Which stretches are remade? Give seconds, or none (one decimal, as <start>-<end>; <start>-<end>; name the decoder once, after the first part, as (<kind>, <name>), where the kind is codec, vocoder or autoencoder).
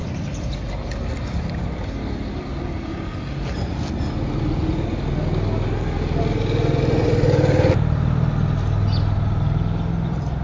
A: none